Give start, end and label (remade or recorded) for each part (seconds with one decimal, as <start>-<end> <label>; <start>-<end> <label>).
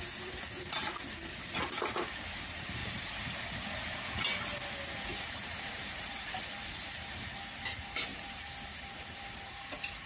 0.0-2.8 recorded; 2.8-3.4 remade; 3.4-5.1 recorded; 5.1-7.3 remade; 7.3-8.1 recorded; 8.1-10.1 remade